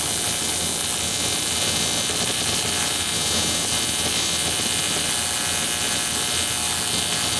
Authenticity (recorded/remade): recorded